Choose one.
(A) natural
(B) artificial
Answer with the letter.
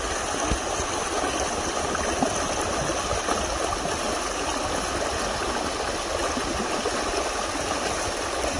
A